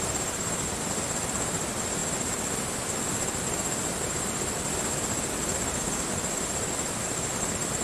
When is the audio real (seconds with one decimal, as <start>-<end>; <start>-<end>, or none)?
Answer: 0.0-7.8